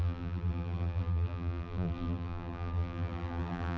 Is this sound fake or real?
fake